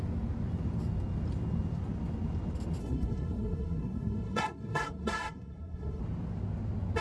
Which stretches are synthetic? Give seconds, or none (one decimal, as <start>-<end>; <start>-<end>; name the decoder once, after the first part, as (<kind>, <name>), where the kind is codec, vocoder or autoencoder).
2.8-6.0 (codec, SNAC)